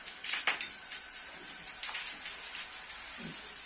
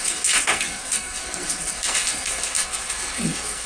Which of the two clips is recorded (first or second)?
first